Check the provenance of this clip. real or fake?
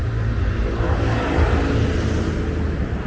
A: real